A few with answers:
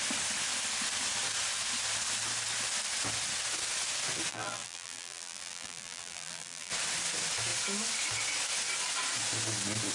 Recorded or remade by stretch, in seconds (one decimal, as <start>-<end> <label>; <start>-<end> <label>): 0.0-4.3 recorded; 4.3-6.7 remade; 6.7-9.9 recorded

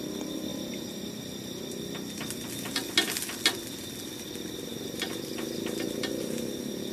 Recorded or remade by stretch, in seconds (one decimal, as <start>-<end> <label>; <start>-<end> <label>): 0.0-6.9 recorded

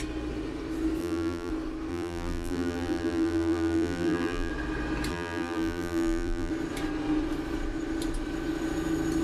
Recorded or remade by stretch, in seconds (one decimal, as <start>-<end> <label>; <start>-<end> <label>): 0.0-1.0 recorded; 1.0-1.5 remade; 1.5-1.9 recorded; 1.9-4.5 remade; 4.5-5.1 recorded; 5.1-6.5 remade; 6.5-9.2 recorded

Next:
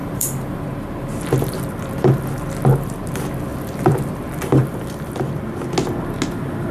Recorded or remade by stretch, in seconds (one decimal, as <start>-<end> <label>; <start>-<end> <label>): 0.0-0.6 remade; 0.6-3.5 recorded; 3.5-4.1 remade; 4.1-4.6 recorded; 4.6-5.3 remade; 5.3-6.7 recorded

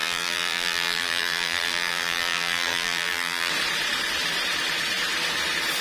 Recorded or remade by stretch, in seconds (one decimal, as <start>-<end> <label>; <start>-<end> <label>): 0.0-3.5 remade; 3.5-5.8 recorded

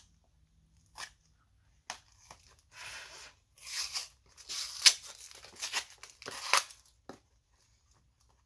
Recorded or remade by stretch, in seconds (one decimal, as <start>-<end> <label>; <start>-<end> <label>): 0.0-8.5 recorded

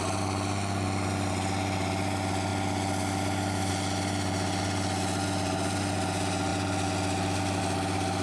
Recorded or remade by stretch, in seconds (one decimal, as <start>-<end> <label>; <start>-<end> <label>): 0.0-8.2 recorded

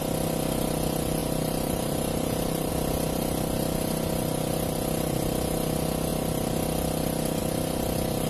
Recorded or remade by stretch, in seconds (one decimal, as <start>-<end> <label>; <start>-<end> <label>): 0.0-1.2 recorded; 1.2-2.7 remade; 2.7-8.3 recorded